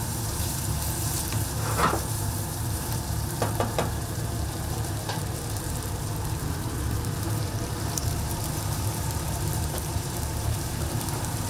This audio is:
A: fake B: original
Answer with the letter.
A